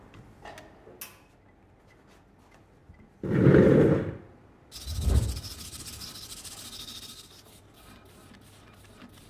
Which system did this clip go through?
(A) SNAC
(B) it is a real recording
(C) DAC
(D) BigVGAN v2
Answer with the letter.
B